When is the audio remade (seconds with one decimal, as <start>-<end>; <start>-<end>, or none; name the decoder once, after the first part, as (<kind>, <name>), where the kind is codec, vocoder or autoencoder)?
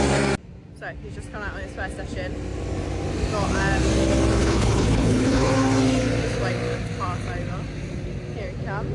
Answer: 4.4-5.5 (codec, HILCodec)